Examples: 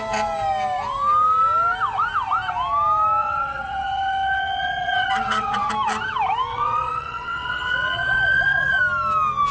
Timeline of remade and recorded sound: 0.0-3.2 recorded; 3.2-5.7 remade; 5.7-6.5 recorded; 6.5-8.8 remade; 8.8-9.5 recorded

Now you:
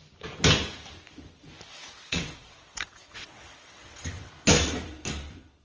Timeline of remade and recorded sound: 0.0-1.7 recorded; 1.7-4.3 remade; 4.3-5.6 recorded

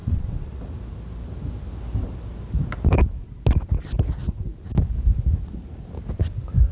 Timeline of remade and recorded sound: 0.0-0.6 remade; 0.6-6.7 recorded

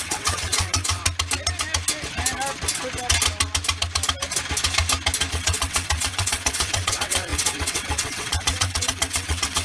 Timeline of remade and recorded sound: 0.0-1.0 remade; 1.0-5.3 recorded; 5.3-9.6 remade

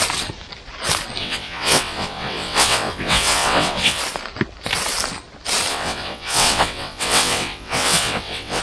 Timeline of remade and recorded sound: 0.0-1.2 recorded; 1.2-4.0 remade; 4.0-5.7 recorded; 5.7-8.6 remade

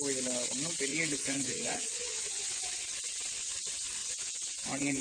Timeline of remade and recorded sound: 0.0-0.9 recorded; 0.9-2.7 remade; 2.7-4.0 recorded; 4.0-5.0 remade

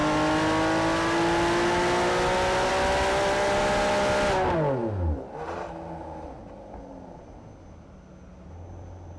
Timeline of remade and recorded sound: 0.0-9.2 recorded